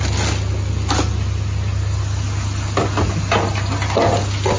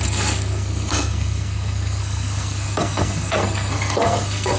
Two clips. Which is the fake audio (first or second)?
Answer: second